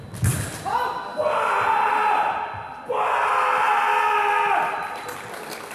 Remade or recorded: recorded